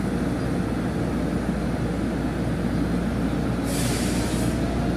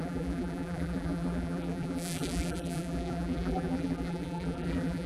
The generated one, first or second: second